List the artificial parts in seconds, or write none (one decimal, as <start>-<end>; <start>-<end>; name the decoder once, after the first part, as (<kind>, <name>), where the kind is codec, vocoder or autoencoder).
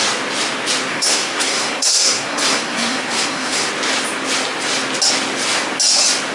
0.9-3.7 (codec, SNAC)